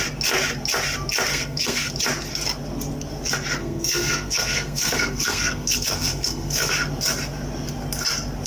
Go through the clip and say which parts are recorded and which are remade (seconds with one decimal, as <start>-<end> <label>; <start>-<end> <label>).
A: 0.0-1.3 recorded; 1.3-1.9 remade; 1.9-3.6 recorded; 3.6-6.7 remade; 6.7-8.5 recorded